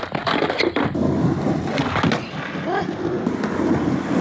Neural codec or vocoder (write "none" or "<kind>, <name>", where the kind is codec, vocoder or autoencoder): none